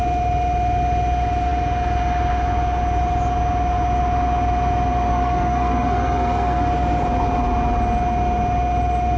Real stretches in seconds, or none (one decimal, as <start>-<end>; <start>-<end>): 0.0-5.1; 6.7-9.2